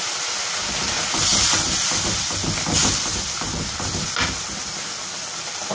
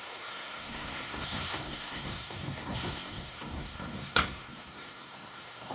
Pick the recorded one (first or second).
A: first